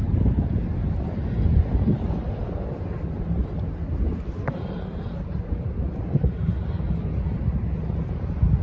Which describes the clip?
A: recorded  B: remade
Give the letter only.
A